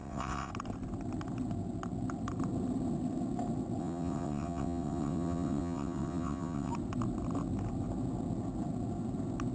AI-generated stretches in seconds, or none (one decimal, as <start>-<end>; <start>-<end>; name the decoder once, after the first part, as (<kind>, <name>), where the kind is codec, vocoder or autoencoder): 0.0-0.5 (vocoder, WaveNeXt); 3.8-6.7